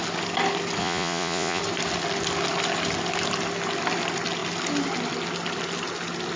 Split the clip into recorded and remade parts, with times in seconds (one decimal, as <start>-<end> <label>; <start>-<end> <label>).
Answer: 0.0-0.8 recorded; 0.8-1.6 remade; 1.6-6.4 recorded